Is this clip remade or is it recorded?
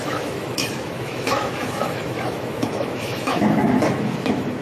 remade